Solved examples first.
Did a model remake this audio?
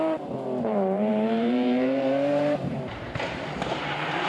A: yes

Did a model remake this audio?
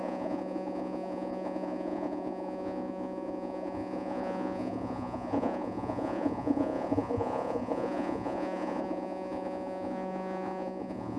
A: yes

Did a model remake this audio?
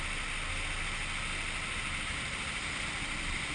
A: no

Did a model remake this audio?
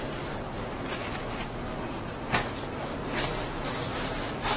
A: no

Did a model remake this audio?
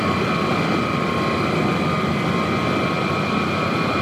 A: no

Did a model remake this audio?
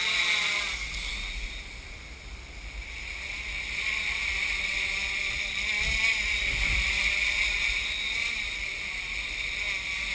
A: no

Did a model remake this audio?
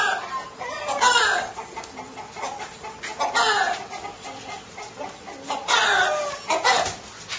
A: no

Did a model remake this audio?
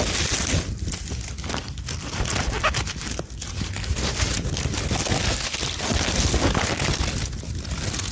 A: no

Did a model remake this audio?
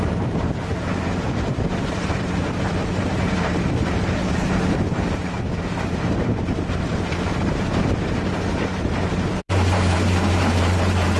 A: yes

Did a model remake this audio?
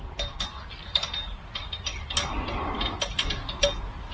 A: no